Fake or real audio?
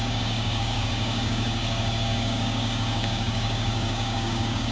fake